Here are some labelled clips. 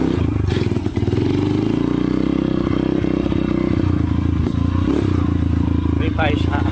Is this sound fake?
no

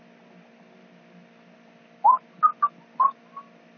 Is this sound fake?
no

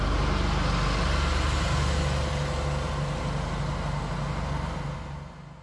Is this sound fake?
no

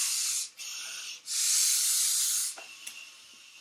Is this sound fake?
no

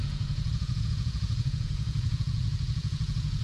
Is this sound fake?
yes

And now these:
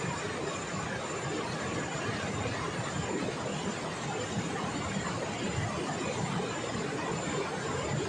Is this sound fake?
no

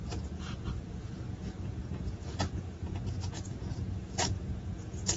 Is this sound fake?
yes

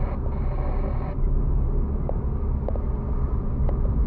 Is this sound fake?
no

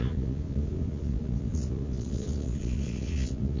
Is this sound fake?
yes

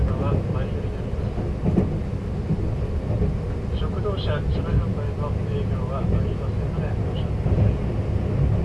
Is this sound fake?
no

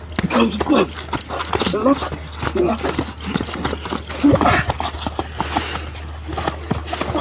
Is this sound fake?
no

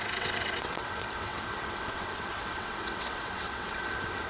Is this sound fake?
yes